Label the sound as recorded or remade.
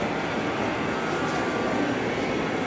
recorded